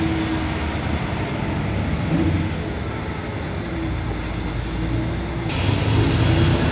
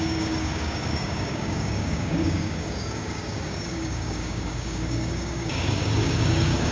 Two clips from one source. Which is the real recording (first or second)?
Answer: first